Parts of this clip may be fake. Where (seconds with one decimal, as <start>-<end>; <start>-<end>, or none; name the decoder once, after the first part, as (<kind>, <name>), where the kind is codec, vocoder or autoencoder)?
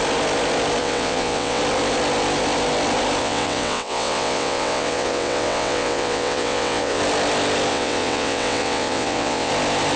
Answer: 0.8-1.6 (vocoder, WaveNeXt); 3.2-7.0; 7.7-9.5